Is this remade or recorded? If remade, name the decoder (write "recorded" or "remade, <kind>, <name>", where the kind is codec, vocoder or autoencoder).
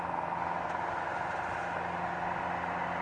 recorded